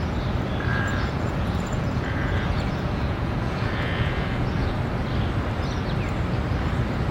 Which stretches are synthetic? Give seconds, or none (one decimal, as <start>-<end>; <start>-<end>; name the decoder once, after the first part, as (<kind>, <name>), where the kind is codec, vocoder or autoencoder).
0.7-4.8 (vocoder, Vocos)